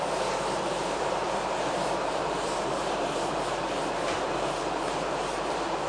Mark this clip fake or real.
fake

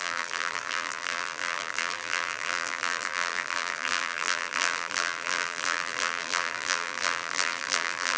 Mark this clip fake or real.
fake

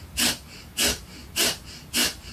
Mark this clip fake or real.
real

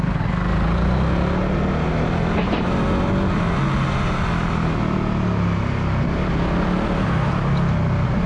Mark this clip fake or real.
real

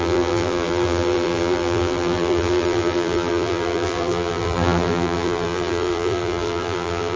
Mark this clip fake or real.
fake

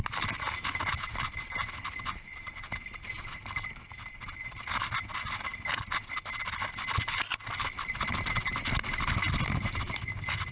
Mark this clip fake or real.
real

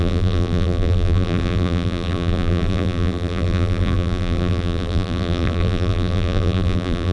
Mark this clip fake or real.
fake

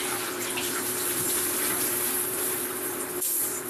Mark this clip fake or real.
fake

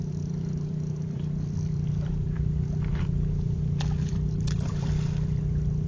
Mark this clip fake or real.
fake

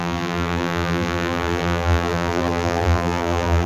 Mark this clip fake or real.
fake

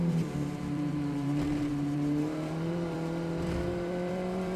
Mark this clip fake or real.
fake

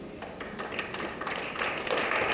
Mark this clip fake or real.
fake